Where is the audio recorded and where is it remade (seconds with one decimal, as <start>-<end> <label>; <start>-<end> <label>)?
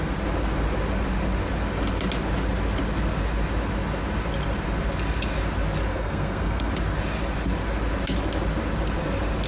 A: 0.0-5.9 recorded; 5.9-6.7 remade; 6.7-9.5 recorded